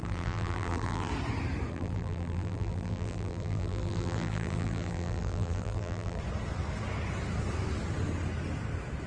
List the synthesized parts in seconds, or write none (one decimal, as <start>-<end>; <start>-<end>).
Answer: 0.0-1.1; 1.7-6.2